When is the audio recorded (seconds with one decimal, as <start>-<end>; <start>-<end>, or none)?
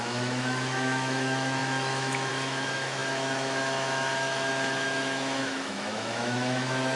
none